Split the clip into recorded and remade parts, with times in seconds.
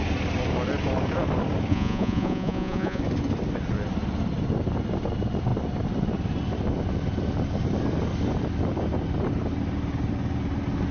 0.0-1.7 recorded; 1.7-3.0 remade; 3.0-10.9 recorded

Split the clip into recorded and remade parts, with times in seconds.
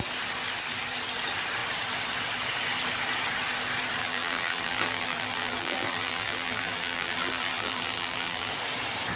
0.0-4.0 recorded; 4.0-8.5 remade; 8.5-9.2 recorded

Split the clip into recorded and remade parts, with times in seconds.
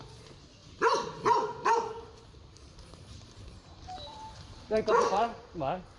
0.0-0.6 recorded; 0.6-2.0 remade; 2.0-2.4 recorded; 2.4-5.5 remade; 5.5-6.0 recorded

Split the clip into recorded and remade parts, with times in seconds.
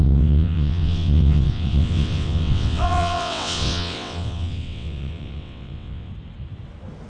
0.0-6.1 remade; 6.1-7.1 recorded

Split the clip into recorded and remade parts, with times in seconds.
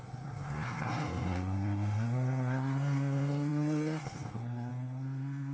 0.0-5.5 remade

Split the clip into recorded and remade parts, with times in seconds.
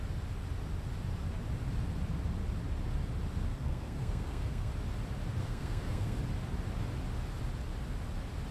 0.0-3.5 recorded; 3.5-4.7 remade; 4.7-5.4 recorded; 5.4-6.2 remade; 6.2-8.5 recorded